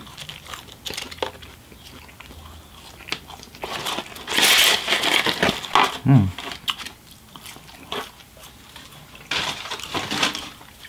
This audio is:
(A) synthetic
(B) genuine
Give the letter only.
B